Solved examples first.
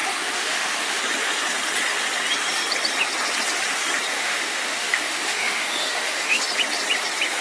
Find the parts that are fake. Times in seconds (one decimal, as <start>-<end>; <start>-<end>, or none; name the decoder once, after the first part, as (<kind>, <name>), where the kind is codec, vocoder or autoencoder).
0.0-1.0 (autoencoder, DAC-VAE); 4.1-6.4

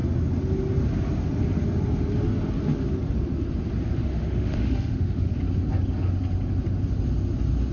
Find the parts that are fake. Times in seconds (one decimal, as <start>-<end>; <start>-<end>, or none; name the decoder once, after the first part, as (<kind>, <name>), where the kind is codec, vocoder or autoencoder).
4.1-5.4 (autoencoder, DAC-VAE)

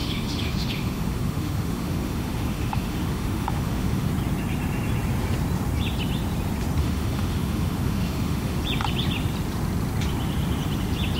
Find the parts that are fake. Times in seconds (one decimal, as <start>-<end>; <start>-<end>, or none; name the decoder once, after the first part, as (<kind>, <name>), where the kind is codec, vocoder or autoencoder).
0.0-4.1 (autoencoder, DAC-VAE); 6.8-8.6

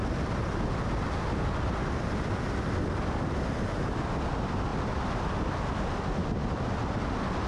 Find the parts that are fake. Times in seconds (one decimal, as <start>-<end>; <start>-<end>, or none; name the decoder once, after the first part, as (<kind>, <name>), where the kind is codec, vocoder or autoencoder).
none

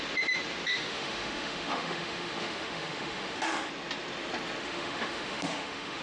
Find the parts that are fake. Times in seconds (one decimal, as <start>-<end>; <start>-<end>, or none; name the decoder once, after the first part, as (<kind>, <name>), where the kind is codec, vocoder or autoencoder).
0.7-3.7 (autoencoder, DAC-VAE); 4.6-6.0

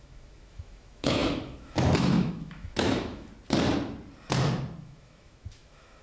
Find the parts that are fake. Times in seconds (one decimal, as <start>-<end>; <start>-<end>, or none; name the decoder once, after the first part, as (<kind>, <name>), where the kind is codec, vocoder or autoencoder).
0.0-3.3 (autoencoder, DAC-VAE); 4.8-6.0

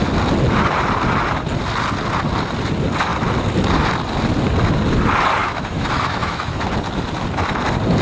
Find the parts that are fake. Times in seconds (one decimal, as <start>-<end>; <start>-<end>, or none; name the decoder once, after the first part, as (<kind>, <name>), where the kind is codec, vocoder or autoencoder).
5.4-6.7 (autoencoder, DAC-VAE)